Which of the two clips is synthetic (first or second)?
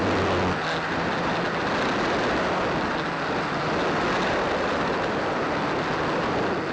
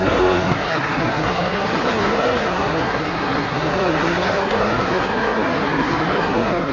second